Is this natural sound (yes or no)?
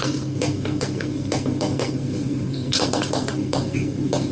no